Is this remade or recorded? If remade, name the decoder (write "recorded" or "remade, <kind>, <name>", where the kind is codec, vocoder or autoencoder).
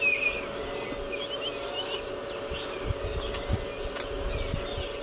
recorded